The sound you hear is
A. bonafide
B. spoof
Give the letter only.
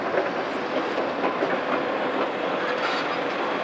A